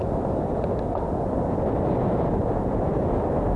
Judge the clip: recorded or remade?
recorded